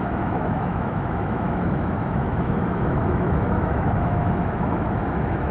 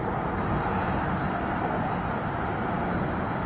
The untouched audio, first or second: second